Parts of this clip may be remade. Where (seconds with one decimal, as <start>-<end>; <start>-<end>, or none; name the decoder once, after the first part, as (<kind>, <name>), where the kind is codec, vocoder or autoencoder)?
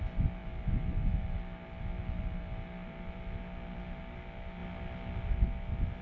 none